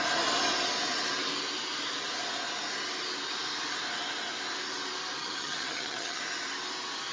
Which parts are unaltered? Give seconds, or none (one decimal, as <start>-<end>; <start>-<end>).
0.0-5.2; 6.2-7.1